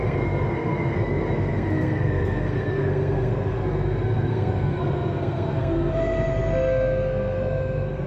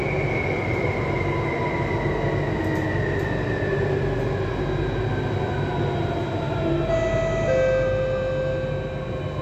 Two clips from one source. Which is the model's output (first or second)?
first